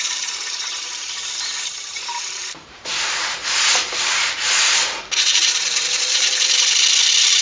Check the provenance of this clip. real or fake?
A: fake